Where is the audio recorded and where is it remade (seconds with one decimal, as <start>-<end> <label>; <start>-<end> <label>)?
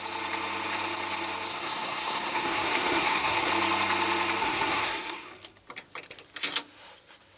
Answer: 0.0-1.5 recorded; 1.5-3.5 remade; 3.5-4.4 recorded; 4.4-5.3 remade; 5.3-7.4 recorded